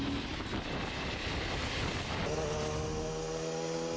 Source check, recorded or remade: recorded